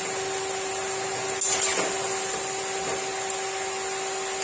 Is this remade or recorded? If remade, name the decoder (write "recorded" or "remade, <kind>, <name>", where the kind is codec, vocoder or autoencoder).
recorded